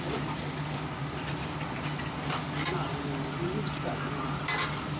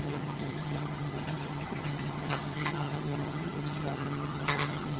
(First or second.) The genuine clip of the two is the first